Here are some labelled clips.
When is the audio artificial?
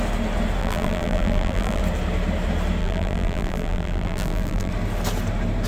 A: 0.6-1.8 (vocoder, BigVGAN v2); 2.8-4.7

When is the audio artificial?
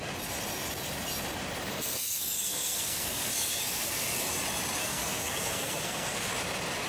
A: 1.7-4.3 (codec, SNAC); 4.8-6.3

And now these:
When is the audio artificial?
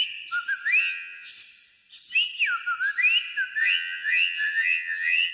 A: 0.8-1.3 (vocoder, HiFi-GAN); 3.6-5.3